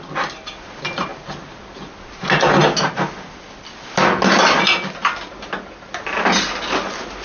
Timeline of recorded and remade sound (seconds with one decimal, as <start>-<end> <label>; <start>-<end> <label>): 0.0-7.2 recorded